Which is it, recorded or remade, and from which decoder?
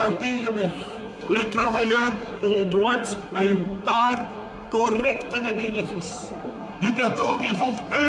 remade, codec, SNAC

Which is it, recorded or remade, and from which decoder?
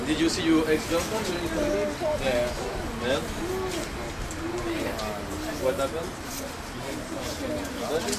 recorded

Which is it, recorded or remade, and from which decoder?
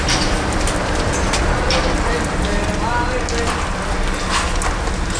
recorded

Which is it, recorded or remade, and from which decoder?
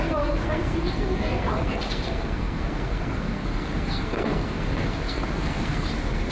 remade, codec, SNAC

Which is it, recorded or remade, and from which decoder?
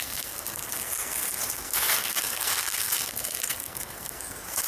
remade, codec, SNAC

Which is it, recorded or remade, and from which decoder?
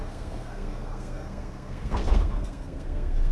remade, codec, SNAC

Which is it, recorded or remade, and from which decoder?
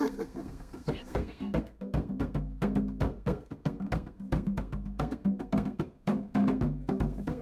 remade, codec, SNAC